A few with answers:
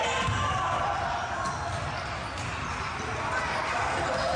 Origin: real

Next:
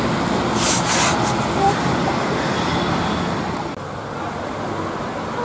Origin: real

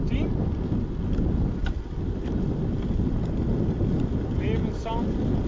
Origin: real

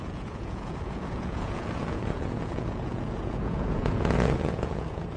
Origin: fake